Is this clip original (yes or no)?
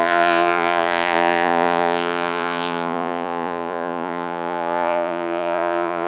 no